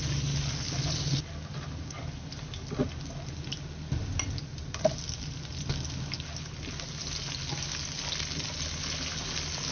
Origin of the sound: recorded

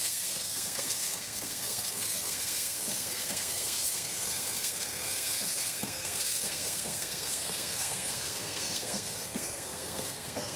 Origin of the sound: remade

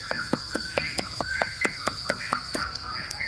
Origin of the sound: remade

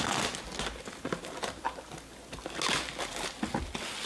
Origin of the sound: recorded